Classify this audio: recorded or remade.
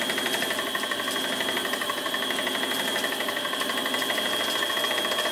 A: recorded